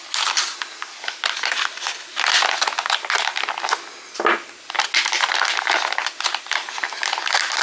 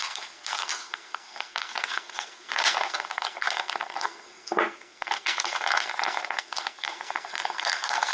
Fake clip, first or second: second